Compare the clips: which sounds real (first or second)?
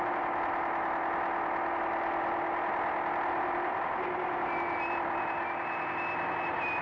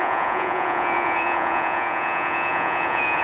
first